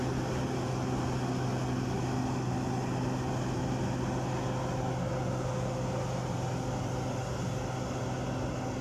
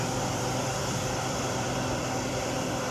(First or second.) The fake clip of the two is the second